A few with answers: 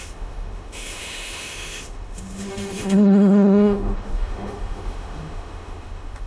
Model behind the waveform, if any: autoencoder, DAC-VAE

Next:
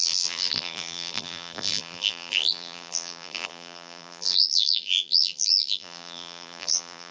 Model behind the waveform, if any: vocoder, BigVGAN v2